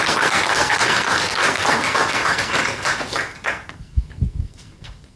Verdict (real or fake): fake